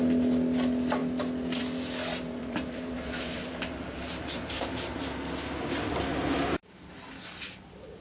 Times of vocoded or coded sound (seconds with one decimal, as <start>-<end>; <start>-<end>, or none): 2.1-5.0